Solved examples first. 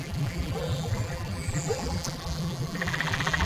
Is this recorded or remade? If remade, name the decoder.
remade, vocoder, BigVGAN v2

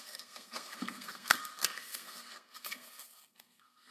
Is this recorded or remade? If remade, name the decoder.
remade, codec, SNAC